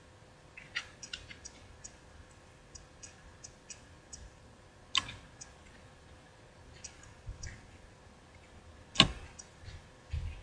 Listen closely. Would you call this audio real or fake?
real